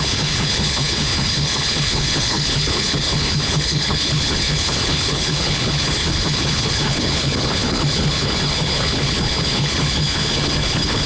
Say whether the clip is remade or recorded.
remade